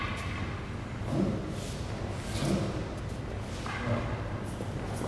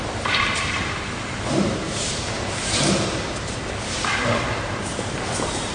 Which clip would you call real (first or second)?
first